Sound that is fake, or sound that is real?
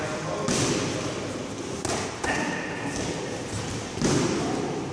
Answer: real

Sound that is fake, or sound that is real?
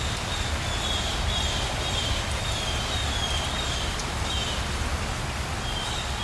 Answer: real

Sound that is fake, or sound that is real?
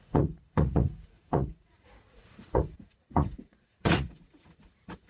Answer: fake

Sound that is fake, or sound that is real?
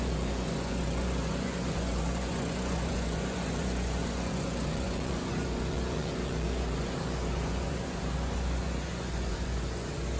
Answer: fake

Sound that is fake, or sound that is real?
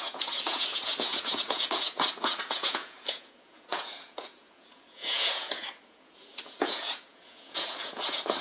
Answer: fake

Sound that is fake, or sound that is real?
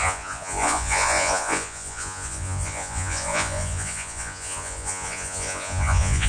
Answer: fake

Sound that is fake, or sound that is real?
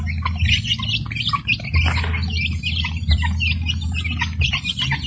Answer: real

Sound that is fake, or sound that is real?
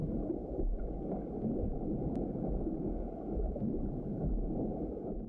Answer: real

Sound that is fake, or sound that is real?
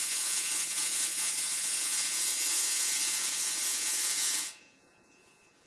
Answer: fake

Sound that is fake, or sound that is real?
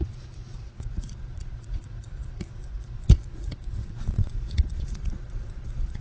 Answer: fake